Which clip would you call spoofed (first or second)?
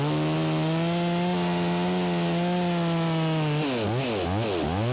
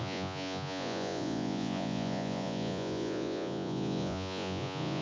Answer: second